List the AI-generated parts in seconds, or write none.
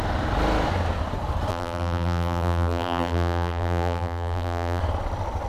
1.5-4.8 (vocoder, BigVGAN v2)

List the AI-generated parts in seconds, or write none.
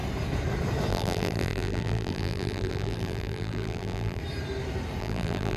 0.9-4.2 (vocoder, BigVGAN v2); 5.0-5.6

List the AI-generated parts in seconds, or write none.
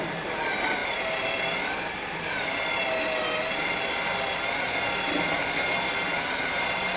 none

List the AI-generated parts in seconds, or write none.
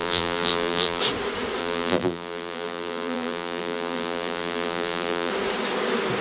0.0-1.0 (vocoder, BigVGAN v2); 1.6-5.3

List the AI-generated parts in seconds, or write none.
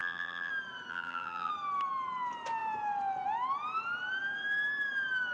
0.0-0.5 (vocoder, BigVGAN v2); 0.9-1.5